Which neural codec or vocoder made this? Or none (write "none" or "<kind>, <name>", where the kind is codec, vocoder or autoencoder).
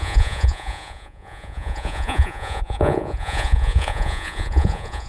vocoder, Vocos